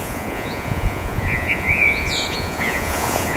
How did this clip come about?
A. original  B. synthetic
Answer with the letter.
B